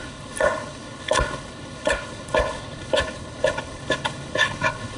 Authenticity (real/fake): fake